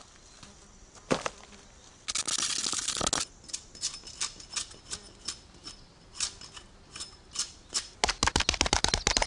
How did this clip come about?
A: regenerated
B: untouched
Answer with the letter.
B